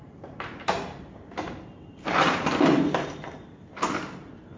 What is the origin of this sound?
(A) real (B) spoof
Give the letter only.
B